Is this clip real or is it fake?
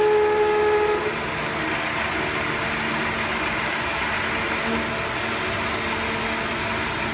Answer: real